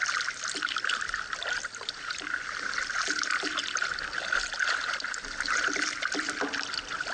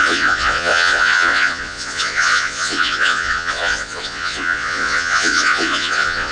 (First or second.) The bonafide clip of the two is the first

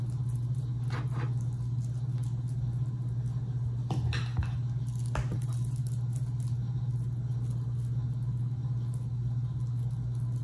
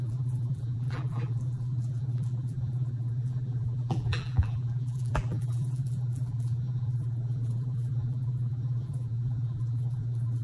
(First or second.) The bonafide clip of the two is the first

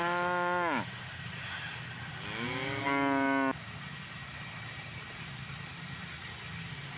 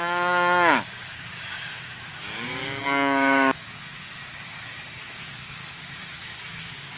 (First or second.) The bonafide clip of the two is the first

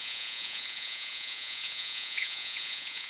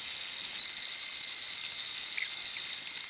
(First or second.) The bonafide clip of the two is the second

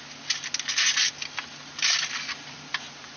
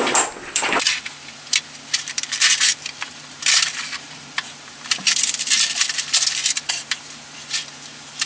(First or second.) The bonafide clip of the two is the first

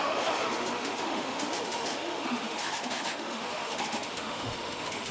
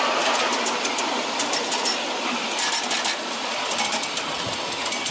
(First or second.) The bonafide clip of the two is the second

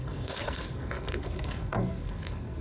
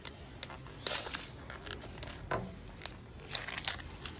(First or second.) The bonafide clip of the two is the second